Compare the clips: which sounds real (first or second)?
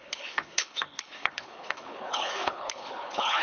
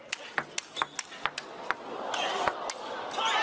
second